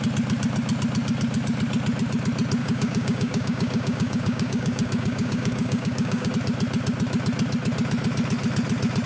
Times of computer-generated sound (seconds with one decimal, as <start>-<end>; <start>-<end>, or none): 2.6-6.3